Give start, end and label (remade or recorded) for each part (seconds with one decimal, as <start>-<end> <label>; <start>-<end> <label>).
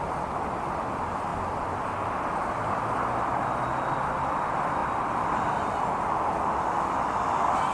0.0-7.7 recorded